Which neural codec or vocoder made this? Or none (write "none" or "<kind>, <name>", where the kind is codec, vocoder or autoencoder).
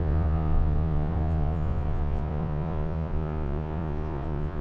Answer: vocoder, Vocos